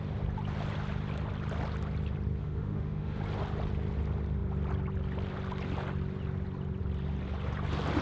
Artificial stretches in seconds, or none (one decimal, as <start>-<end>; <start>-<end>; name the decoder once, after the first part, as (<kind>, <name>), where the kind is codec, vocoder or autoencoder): 2.4-3.2 (autoencoder, DAC-VAE)